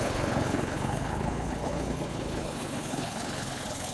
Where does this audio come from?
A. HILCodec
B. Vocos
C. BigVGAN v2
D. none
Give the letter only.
A